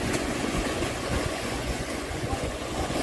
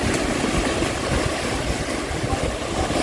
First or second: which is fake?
first